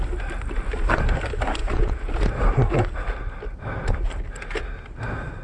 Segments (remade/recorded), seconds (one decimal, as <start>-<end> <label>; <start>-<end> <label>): 0.0-1.6 recorded; 1.6-2.1 remade; 2.1-5.4 recorded

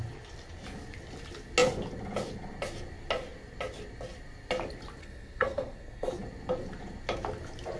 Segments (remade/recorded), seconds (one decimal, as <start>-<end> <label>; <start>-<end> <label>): 0.0-5.0 recorded; 5.0-6.1 remade; 6.1-7.8 recorded

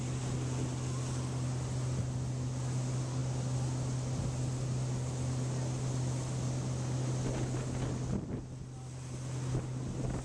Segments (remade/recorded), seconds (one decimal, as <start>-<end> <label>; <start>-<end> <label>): 0.0-10.2 recorded

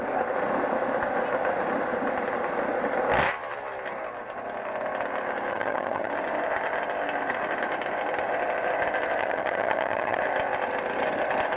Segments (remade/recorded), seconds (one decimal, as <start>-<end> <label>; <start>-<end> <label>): 0.0-5.5 recorded; 5.5-6.1 remade; 6.1-9.2 recorded; 9.2-10.2 remade; 10.2-11.6 recorded